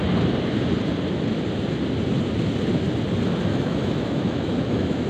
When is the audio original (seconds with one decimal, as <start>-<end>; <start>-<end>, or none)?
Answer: 0.0-3.5